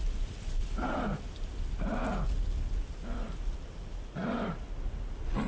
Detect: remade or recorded recorded